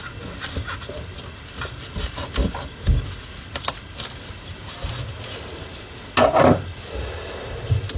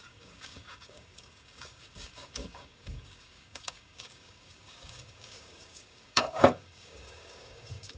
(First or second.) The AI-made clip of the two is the second